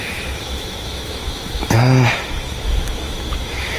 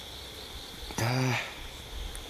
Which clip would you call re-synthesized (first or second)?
first